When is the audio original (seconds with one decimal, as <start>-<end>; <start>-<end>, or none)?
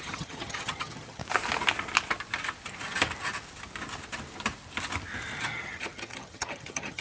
1.2-5.4